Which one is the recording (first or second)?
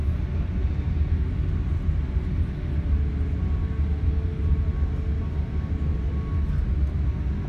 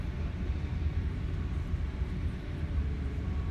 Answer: first